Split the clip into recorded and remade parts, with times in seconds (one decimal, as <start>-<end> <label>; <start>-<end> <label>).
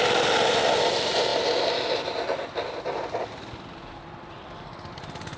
0.0-5.4 recorded